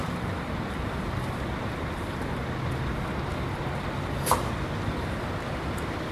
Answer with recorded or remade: recorded